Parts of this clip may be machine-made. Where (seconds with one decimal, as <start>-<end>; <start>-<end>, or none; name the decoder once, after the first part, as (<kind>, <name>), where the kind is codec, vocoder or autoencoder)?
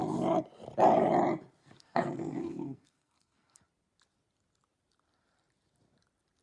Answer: 1.6-3.6 (codec, SNAC)